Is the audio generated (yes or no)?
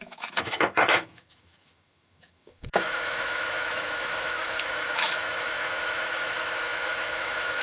yes